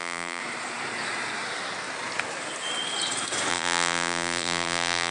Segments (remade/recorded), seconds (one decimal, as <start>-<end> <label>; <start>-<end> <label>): 0.0-0.4 remade; 0.4-3.5 recorded; 3.5-5.1 remade